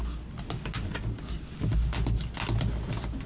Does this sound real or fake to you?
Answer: real